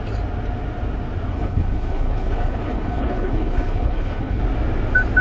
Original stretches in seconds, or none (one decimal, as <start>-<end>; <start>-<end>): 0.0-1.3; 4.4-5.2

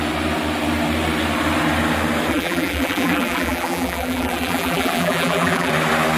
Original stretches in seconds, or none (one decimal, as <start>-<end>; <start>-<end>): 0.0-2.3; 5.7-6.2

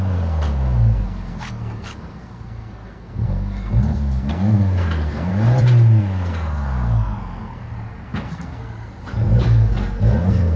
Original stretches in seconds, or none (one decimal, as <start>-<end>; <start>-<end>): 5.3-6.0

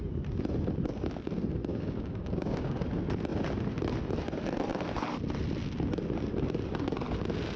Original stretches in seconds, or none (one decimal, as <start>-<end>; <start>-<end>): 0.0-1.7; 2.8-7.6

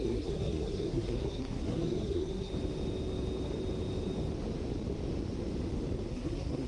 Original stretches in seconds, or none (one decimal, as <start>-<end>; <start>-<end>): 2.5-6.1

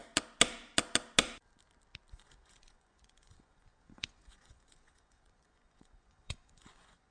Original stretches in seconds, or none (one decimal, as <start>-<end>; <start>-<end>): 0.0-2.1